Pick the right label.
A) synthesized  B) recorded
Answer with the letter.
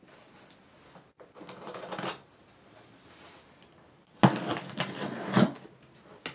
B